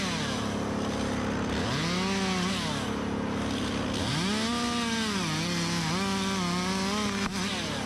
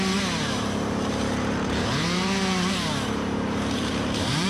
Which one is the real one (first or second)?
first